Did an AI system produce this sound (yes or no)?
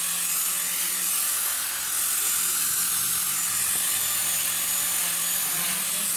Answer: no